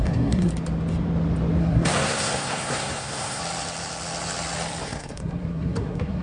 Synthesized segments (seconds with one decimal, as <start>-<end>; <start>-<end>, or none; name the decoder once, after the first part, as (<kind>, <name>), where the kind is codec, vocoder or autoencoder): 0.0-0.5 (codec, SNAC); 1.6-3.4; 4.8-6.2

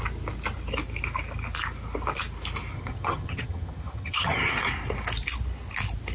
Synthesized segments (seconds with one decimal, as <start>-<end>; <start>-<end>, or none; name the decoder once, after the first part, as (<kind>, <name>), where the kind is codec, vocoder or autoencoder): 2.7-4.5 (vocoder, HiFi-GAN)

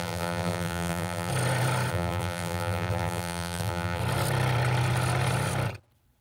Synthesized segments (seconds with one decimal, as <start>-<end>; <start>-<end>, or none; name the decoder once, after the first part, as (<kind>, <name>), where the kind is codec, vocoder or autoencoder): 0.0-1.3 (vocoder, BigVGAN v2); 1.9-4.0